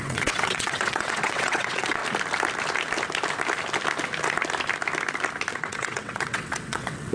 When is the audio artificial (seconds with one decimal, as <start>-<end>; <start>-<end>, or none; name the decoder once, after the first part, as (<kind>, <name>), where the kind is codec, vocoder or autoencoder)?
0.0-2.0 (vocoder, WaveNeXt); 5.5-7.1